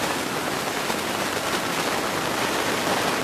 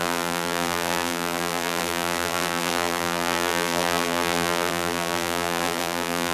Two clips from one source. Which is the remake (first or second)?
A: second